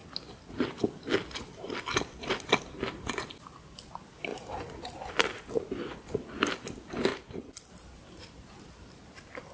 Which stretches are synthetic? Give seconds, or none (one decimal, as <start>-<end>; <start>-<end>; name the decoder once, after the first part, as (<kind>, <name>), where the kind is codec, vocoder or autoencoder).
4.3-5.1 (vocoder, BigVGAN v2); 7.1-7.7